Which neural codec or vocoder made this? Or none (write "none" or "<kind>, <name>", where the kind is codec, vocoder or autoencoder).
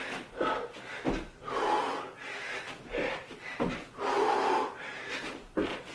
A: none